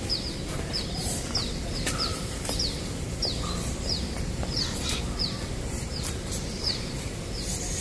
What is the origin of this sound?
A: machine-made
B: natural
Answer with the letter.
A